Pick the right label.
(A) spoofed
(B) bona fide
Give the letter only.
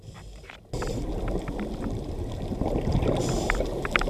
B